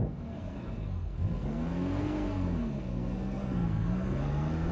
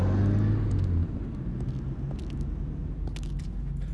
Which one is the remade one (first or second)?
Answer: first